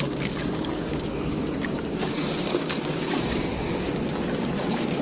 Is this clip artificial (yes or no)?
yes